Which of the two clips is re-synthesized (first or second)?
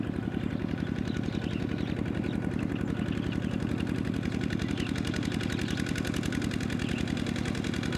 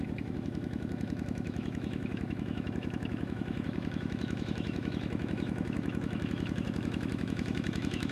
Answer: second